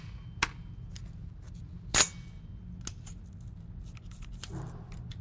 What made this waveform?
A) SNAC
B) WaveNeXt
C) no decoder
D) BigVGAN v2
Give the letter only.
C